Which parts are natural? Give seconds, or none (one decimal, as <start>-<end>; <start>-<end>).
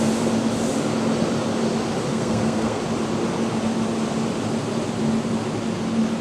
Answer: 0.0-2.1; 2.8-6.2